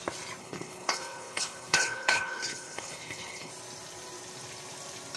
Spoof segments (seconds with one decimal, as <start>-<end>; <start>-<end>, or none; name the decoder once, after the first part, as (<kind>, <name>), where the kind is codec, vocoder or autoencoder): 0.4-3.5 (codec, HILCodec)